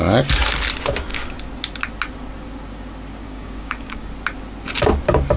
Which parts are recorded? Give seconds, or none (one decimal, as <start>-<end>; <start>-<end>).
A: 0.0-3.2; 4.1-5.4

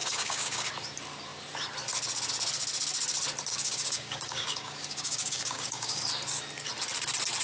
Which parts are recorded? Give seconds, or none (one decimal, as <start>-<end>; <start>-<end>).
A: 0.7-3.5; 6.0-7.4